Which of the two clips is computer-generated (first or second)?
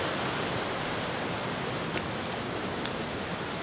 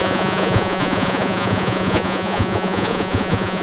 second